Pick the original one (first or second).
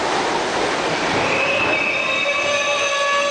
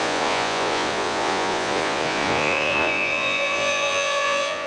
first